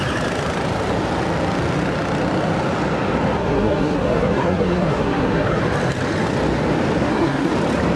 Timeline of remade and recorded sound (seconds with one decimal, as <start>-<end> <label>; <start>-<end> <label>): 0.0-3.4 recorded; 3.4-5.6 remade; 5.6-7.0 recorded; 7.0-7.5 remade; 7.5-8.0 recorded

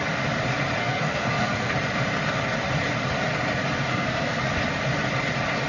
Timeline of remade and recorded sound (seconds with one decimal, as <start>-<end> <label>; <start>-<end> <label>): 0.0-0.8 recorded; 0.8-1.7 remade; 1.7-3.9 recorded; 3.9-4.5 remade; 4.5-5.7 recorded